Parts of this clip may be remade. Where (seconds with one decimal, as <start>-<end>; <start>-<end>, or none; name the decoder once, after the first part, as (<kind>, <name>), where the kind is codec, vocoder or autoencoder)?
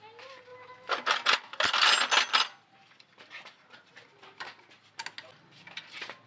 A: none